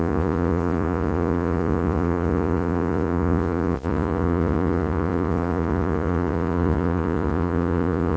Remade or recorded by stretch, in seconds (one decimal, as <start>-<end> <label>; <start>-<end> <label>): 0.0-8.2 remade

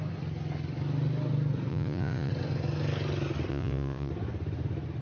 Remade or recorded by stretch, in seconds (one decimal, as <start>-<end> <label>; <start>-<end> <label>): 0.0-1.7 recorded; 1.7-2.3 remade; 2.3-3.5 recorded; 3.5-4.1 remade; 4.1-5.0 recorded

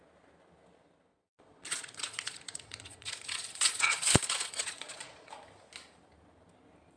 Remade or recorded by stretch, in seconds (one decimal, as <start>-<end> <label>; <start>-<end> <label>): 0.0-1.1 recorded; 1.1-5.3 remade; 5.3-7.0 recorded

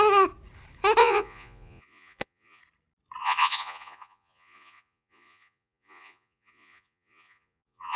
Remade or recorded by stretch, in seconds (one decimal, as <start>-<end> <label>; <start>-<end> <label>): 0.0-1.0 recorded; 1.0-2.6 remade; 2.6-3.2 recorded; 3.2-8.0 remade

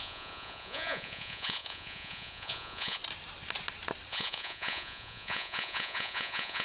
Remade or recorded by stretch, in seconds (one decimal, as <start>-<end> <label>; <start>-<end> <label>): 0.0-3.0 remade; 3.0-4.1 recorded; 4.1-6.6 remade

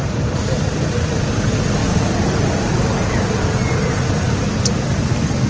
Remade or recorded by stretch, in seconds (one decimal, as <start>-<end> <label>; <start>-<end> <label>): 0.0-5.5 recorded

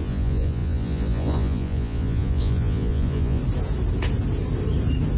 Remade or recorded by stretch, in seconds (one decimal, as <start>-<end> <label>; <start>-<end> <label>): 0.0-3.4 remade; 3.4-5.2 recorded

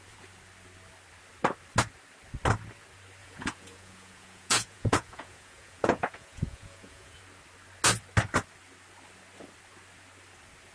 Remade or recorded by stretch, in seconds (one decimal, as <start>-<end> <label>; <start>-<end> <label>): 0.0-3.2 recorded; 3.2-7.2 remade; 7.2-10.7 recorded